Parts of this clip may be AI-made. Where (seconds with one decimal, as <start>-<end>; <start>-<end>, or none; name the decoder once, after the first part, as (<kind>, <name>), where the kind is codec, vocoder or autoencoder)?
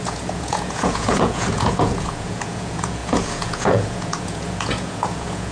0.0-5.5 (vocoder, Vocos)